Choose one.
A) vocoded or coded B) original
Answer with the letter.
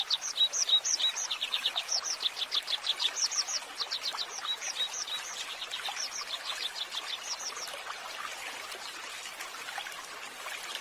B